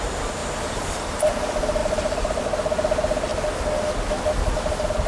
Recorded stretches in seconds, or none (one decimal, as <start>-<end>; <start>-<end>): 0.0-0.4; 1.3-1.8; 2.4-5.1

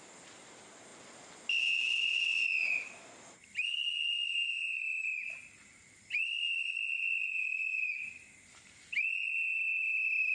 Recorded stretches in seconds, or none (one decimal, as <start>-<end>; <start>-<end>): 0.0-9.4

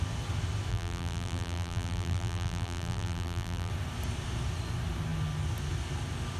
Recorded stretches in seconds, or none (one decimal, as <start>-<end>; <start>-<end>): 0.0-0.7; 3.7-6.4

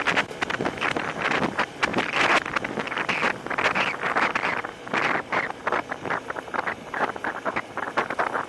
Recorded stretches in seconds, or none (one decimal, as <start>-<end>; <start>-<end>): 0.0-8.5

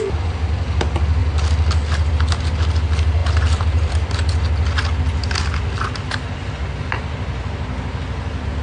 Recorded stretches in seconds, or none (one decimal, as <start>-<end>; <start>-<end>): 0.0-3.2; 3.9-8.6

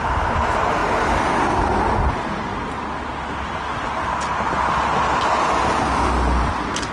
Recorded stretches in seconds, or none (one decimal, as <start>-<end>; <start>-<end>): 0.8-2.1; 2.5-6.9

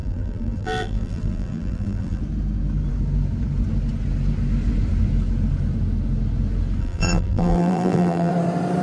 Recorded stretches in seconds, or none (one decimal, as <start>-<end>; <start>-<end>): 2.2-6.8; 8.3-8.8

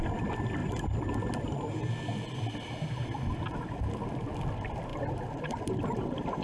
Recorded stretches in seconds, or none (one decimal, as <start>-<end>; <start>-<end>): 0.0-4.9